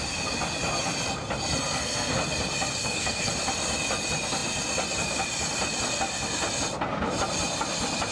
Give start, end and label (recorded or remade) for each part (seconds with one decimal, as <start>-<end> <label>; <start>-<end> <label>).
0.0-1.6 recorded; 1.6-2.1 remade; 2.1-2.8 recorded; 2.8-3.3 remade; 3.3-8.1 recorded